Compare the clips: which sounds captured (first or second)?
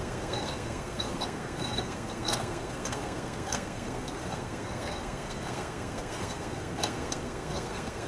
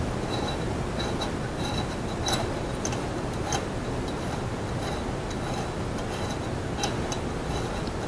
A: second